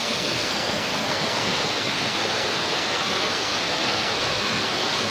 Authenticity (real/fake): fake